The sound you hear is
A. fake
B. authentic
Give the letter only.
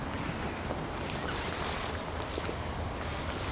B